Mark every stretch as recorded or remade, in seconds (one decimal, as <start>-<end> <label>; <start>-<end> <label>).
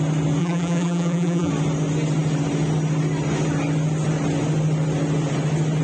0.0-0.4 recorded; 0.4-1.5 remade; 1.5-5.8 recorded